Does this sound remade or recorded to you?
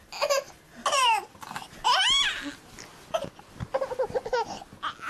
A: recorded